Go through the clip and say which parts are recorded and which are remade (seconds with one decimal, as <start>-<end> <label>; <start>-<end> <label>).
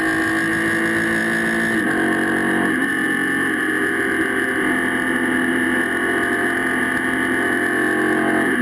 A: 0.0-8.6 recorded